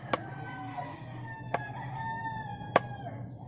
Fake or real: real